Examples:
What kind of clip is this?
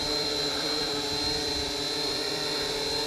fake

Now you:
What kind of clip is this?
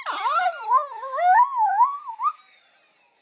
real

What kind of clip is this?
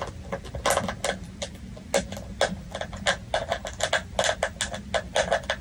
real